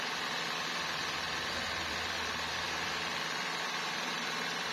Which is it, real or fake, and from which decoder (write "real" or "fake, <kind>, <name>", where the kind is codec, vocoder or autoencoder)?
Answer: fake, vocoder, BigVGAN v2